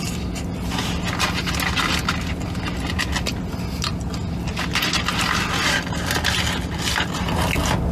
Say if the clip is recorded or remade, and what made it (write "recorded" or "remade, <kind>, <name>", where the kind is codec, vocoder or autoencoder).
recorded